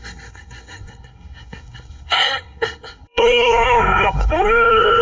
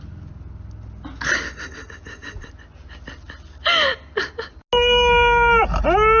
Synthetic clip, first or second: first